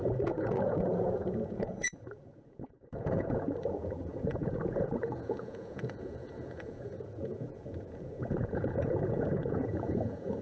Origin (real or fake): fake